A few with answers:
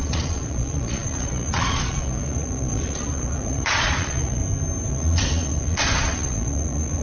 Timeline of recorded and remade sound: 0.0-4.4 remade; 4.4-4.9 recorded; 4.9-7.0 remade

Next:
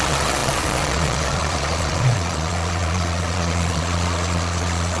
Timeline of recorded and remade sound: 0.0-5.0 remade

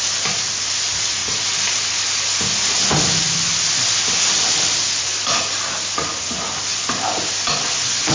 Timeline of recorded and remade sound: 0.0-8.1 recorded

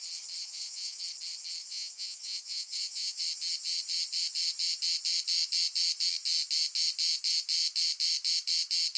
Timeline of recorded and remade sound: 0.0-0.4 recorded; 0.4-1.0 remade; 1.0-1.6 recorded; 1.6-3.2 remade; 3.2-9.0 recorded

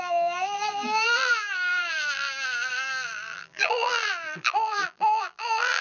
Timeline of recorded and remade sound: 0.0-5.8 remade

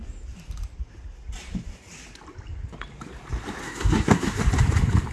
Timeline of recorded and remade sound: 0.0-3.6 recorded; 3.6-4.4 remade; 4.4-5.1 recorded

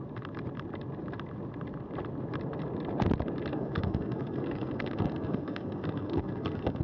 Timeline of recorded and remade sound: 0.0-3.5 recorded; 3.5-6.8 remade